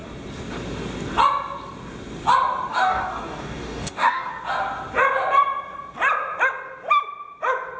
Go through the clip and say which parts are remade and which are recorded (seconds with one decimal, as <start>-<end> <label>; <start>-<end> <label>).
0.0-2.7 recorded; 2.7-4.3 remade; 4.3-7.8 recorded